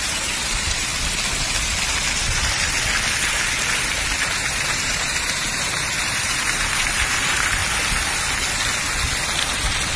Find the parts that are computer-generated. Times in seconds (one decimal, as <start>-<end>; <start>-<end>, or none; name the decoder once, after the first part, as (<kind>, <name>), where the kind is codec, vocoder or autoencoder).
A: 0.0-0.9 (vocoder, BigVGAN v2); 4.6-7.6